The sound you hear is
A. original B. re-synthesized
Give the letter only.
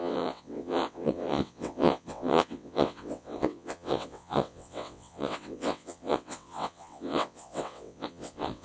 B